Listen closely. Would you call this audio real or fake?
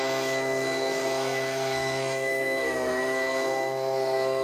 fake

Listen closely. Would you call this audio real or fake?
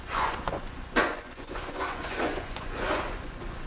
fake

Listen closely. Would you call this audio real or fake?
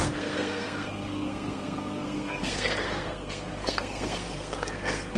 fake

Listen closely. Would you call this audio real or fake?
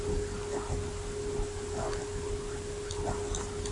real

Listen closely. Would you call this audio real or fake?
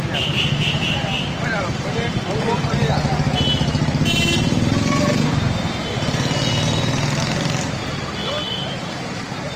real